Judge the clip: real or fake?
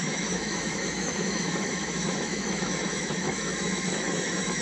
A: fake